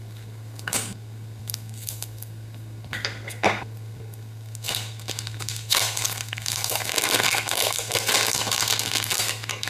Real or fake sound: fake